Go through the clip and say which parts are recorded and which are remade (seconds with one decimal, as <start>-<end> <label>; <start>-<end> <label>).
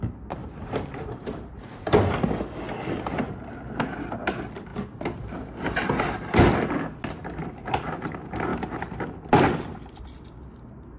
0.0-0.4 recorded; 0.4-2.0 remade; 2.0-11.0 recorded